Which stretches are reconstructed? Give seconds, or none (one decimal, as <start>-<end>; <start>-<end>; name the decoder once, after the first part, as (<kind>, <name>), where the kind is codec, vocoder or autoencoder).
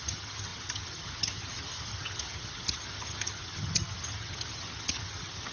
0.0-5.5 (vocoder, HiFi-GAN)